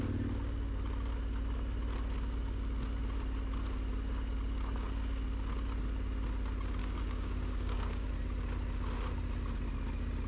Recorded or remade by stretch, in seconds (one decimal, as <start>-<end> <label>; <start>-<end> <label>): 0.0-6.8 recorded; 6.8-8.1 remade; 8.1-10.3 recorded